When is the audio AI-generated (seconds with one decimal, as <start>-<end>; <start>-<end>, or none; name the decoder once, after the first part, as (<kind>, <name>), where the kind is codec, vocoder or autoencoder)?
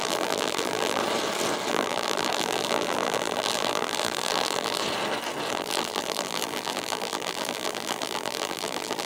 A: 0.0-1.0 (vocoder, BigVGAN v2); 1.7-4.8; 5.5-9.1